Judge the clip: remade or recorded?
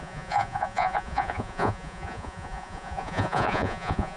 remade